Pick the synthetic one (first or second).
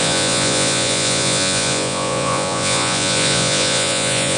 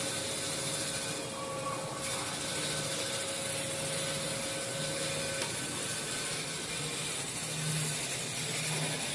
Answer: first